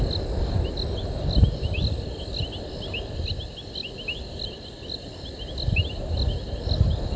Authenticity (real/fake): real